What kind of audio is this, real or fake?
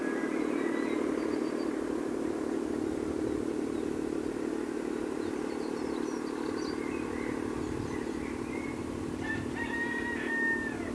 real